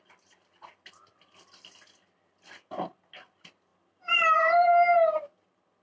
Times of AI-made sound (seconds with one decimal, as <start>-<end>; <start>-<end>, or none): 3.7-4.5